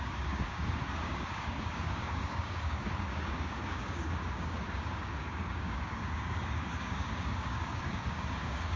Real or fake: fake